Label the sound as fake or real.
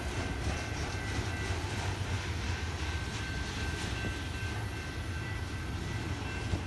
real